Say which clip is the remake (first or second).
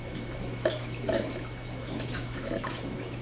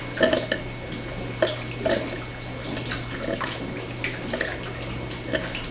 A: first